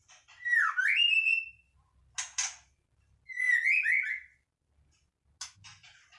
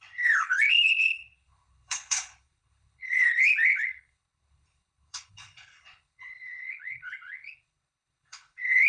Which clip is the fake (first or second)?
second